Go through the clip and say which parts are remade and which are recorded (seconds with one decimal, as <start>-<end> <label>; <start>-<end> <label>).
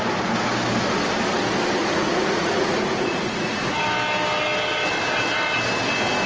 0.0-1.8 recorded; 1.8-3.8 remade; 3.8-6.3 recorded